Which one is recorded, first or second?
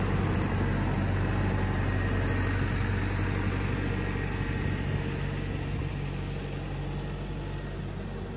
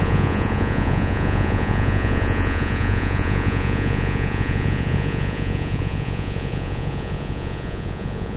first